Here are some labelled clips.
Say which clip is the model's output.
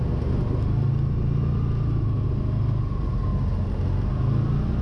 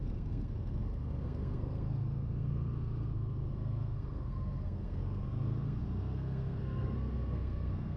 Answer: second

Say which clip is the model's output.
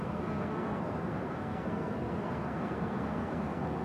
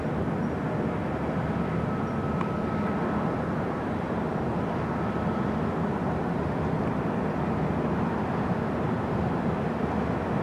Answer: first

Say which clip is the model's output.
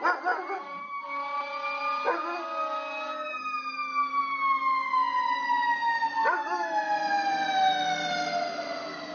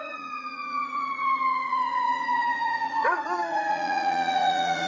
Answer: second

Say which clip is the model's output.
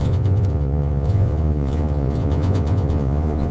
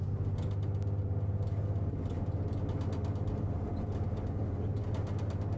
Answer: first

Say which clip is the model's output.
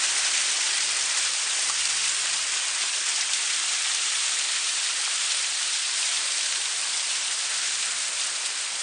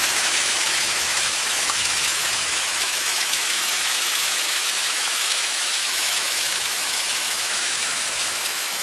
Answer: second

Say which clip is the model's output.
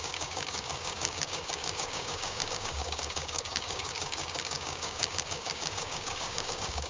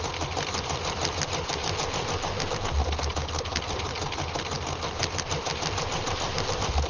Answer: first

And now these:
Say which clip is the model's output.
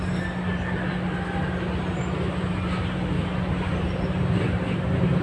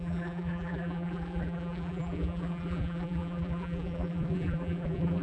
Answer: second